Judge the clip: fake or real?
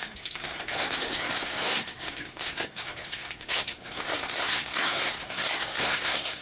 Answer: fake